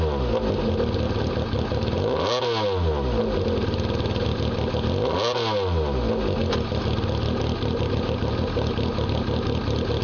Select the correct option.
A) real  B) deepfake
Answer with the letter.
A